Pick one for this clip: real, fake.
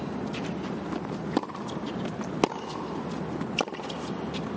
real